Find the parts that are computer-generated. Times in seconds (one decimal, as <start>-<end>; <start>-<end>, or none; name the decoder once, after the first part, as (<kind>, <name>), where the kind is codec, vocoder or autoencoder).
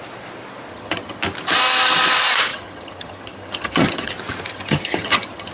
0.7-1.2 (vocoder, HiFi-GAN); 2.5-4.1; 4.5-5.5